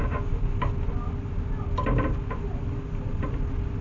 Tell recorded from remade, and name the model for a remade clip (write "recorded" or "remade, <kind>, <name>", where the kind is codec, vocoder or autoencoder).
recorded